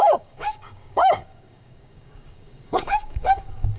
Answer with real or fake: fake